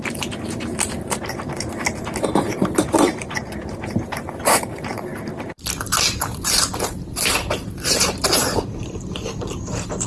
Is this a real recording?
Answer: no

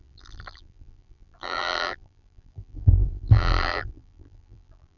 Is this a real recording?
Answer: no